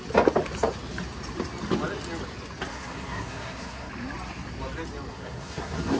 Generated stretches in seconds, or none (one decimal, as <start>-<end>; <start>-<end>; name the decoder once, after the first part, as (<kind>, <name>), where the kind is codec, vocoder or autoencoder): 2.7-3.9 (codec, SNAC); 5.1-6.0